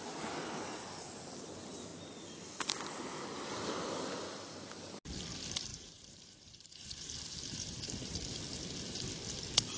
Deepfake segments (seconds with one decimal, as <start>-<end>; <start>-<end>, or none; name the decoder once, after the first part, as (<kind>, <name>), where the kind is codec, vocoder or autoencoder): 5.7-8.4 (vocoder, BigVGAN v2)